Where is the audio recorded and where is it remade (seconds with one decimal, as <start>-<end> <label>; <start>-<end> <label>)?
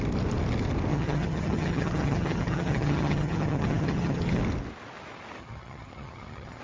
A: 0.0-0.9 recorded; 0.9-4.4 remade; 4.4-5.4 recorded; 5.4-6.6 remade